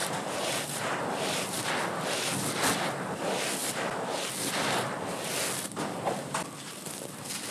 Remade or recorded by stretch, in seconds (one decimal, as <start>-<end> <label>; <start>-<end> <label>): 0.0-1.7 remade; 1.7-7.5 recorded